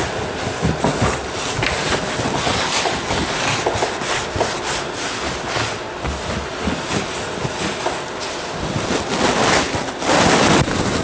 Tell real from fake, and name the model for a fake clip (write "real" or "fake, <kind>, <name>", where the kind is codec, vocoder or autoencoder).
real